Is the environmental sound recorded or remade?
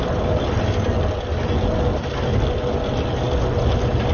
recorded